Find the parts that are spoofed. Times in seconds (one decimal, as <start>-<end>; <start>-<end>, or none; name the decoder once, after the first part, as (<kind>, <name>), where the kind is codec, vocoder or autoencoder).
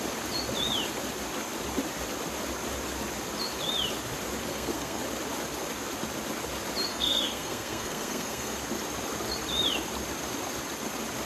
4.5-5.0 (codec, SNAC); 6.9-8.6